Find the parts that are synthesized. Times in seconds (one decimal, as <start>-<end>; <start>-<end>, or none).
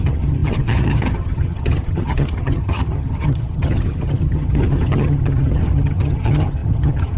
0.0-7.2